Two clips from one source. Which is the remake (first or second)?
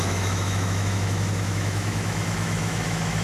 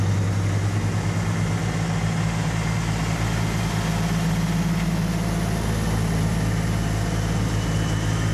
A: first